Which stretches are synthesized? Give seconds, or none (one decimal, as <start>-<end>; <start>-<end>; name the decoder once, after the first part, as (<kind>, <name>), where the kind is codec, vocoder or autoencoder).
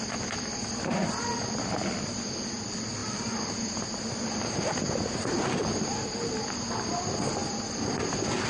none